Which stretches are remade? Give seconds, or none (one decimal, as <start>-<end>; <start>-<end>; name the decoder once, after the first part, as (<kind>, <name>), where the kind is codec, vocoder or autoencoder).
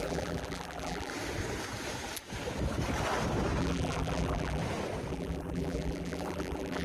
0.0-1.1 (vocoder, BigVGAN v2); 3.6-4.6; 5.1-6.8